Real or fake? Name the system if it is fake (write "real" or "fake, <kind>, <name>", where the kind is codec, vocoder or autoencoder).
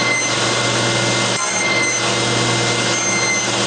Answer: real